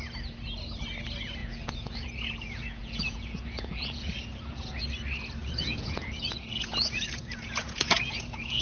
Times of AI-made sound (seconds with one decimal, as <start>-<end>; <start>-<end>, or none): 1.4-4.8; 5.4-8.6